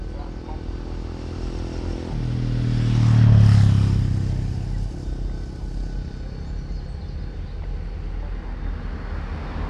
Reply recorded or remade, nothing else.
recorded